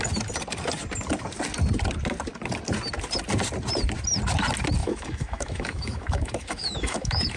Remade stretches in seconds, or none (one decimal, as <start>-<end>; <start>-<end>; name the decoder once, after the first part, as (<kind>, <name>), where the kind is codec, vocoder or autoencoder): 4.8-7.4 (autoencoder, DAC-VAE)